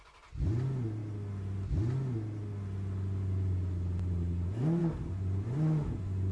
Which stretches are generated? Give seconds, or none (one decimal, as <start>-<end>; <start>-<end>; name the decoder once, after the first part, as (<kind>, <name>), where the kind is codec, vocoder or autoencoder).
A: none